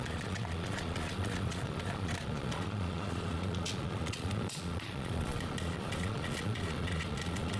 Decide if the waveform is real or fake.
fake